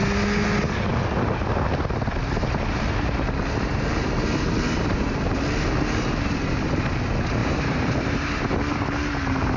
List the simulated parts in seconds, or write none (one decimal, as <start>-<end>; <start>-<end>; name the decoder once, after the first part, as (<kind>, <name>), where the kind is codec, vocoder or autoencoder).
7.4-8.4 (vocoder, BigVGAN v2)